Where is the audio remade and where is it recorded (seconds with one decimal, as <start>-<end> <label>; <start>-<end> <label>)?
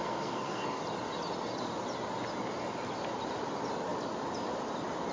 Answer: 0.0-0.8 remade; 0.8-5.1 recorded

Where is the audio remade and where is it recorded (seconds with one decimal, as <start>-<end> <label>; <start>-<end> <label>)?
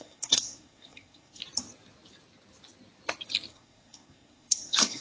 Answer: 0.0-1.4 remade; 1.4-3.5 recorded; 3.5-5.0 remade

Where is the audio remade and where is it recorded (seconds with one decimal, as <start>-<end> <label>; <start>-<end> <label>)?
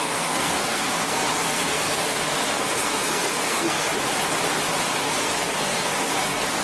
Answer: 0.0-3.9 remade; 3.9-5.0 recorded; 5.0-6.6 remade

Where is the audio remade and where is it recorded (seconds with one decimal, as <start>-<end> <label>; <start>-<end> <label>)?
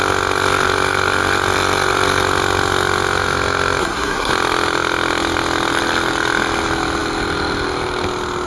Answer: 0.0-3.8 recorded; 3.8-4.3 remade; 4.3-8.5 recorded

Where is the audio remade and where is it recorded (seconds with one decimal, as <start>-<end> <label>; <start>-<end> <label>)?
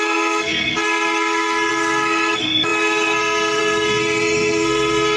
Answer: 0.0-5.2 remade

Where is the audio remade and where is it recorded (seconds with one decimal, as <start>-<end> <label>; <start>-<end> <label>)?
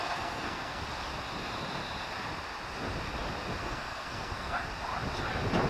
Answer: 0.0-0.8 remade; 0.8-3.6 recorded; 3.6-4.7 remade; 4.7-5.7 recorded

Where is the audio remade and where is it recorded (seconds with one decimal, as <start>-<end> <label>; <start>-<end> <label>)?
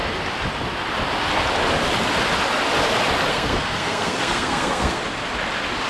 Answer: 0.0-3.3 recorded; 3.3-5.0 remade; 5.0-5.9 recorded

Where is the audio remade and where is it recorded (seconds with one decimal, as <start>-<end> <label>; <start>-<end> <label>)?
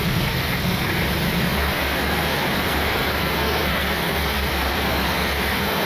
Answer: 0.0-0.9 remade; 0.9-1.4 recorded; 1.4-5.9 remade